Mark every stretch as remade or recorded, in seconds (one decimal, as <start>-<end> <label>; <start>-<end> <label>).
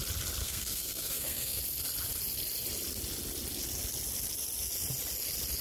0.0-0.4 recorded; 0.4-1.6 remade; 1.6-5.6 recorded